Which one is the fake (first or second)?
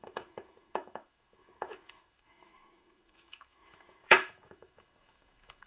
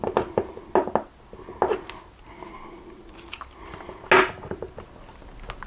first